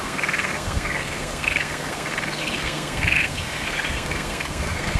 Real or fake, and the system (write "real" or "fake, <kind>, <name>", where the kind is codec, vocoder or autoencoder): fake, codec, SNAC